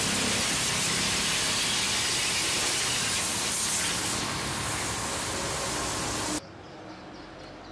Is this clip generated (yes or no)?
no